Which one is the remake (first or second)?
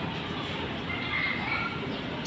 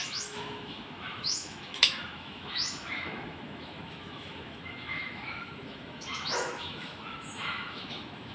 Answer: second